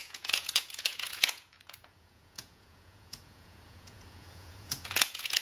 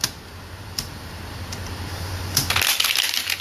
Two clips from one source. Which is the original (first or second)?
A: second